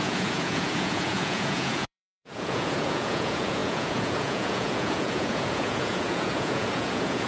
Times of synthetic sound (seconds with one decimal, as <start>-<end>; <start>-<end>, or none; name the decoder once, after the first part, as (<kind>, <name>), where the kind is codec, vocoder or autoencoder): 0.0-7.3 (vocoder, Vocos)